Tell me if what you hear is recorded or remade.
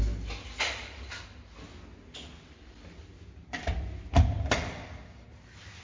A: recorded